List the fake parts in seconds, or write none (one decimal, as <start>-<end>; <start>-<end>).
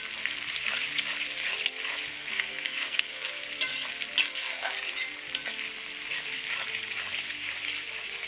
2.1-3.4; 4.2-4.7